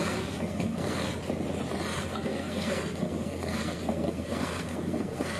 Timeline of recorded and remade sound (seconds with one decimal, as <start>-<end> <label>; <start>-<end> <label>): 0.0-1.1 remade; 1.1-2.0 recorded; 2.0-5.4 remade